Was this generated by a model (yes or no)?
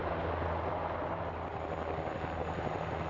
no